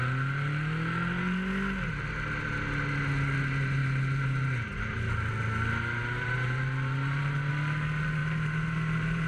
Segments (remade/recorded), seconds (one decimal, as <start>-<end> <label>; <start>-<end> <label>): 0.0-6.0 recorded; 6.0-7.5 remade; 7.5-8.2 recorded; 8.2-9.3 remade